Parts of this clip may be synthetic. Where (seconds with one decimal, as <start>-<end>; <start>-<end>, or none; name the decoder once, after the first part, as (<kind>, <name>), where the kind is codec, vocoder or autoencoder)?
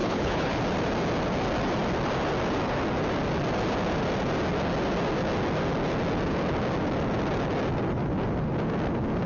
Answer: 0.0-0.6 (codec, HILCodec)